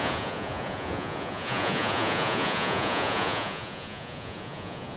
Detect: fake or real fake